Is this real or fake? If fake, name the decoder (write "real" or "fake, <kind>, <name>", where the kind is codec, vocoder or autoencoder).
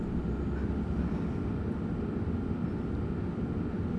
real